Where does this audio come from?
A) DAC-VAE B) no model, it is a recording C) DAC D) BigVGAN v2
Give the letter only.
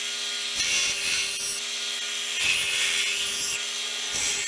B